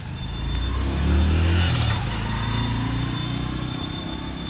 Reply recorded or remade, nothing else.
recorded